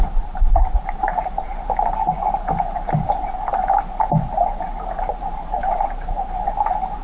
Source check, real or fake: fake